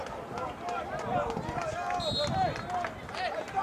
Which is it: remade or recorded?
recorded